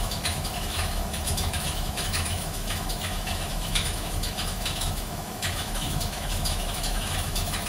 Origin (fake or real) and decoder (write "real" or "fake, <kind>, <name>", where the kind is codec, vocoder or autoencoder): fake, autoencoder, DAC-VAE